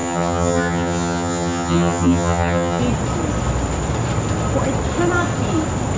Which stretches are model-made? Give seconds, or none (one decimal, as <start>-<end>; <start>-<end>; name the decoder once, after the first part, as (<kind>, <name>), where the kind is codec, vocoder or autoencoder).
0.0-2.8 (vocoder, HiFi-GAN)